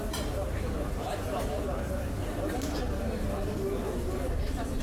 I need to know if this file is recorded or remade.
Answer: recorded